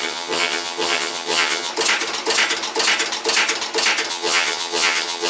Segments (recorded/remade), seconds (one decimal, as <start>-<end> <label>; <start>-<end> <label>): 0.0-1.7 remade; 1.7-4.1 recorded; 4.1-5.3 remade